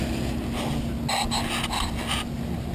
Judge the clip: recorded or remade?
recorded